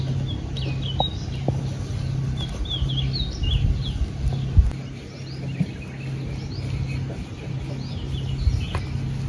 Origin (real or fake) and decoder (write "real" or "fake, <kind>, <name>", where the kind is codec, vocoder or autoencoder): real